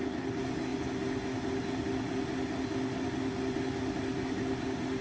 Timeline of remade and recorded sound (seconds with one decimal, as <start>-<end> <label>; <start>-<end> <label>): 0.0-5.0 recorded

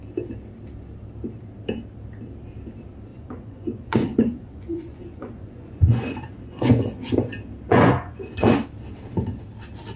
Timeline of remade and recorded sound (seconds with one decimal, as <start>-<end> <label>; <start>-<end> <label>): 0.0-3.1 recorded; 3.1-7.1 remade; 7.1-7.7 recorded; 7.7-8.5 remade; 8.5-10.0 recorded

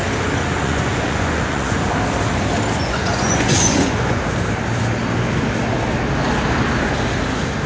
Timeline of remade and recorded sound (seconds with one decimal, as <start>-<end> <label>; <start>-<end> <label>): 0.0-0.5 recorded; 0.5-1.9 remade; 1.9-2.8 recorded; 2.8-4.2 remade; 4.2-7.7 recorded

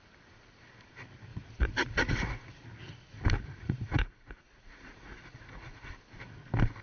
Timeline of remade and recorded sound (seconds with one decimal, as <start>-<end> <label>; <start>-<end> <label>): 0.0-1.3 recorded; 1.3-2.6 remade; 2.6-3.6 recorded; 3.6-6.0 remade; 6.0-6.8 recorded

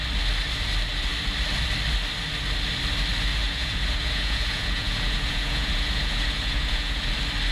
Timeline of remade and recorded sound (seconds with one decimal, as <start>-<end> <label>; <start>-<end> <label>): 0.0-3.3 recorded; 3.3-7.1 remade; 7.1-7.5 recorded

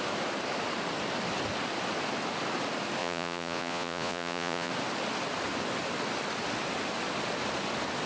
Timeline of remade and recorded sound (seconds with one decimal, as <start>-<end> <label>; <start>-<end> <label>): 0.0-3.0 recorded; 3.0-4.7 remade; 4.7-8.1 recorded

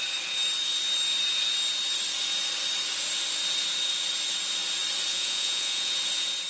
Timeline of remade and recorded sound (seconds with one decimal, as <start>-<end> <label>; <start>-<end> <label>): 0.0-5.1 recorded; 5.1-5.9 remade; 5.9-6.5 recorded